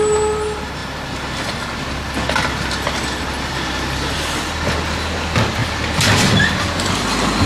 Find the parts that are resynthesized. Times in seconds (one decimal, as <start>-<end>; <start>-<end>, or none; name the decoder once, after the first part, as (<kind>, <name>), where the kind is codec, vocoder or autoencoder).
none